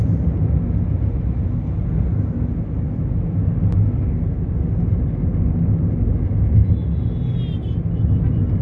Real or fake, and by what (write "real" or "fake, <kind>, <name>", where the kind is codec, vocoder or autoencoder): real